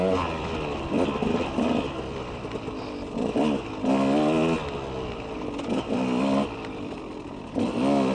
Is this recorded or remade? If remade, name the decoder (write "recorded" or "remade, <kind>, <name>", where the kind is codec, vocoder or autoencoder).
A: recorded